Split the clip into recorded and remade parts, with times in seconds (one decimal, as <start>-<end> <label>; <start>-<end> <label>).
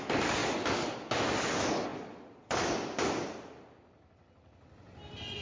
0.0-5.4 recorded